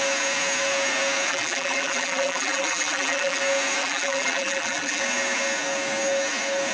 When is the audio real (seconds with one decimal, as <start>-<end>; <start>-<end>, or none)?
0.0-1.3; 3.4-3.8; 5.0-6.7